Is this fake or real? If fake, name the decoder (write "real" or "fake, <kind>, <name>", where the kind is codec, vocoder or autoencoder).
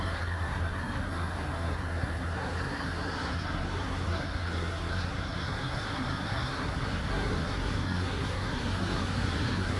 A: fake, codec, SNAC